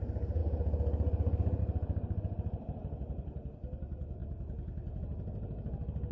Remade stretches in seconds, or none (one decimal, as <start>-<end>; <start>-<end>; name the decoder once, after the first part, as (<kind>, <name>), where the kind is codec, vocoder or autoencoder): none